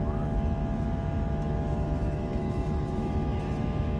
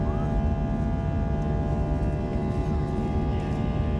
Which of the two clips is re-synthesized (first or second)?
first